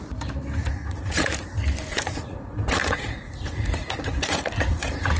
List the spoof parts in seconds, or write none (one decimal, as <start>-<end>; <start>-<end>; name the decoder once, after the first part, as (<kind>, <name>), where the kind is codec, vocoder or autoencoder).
0.6-1.3 (vocoder, Vocos); 1.9-5.2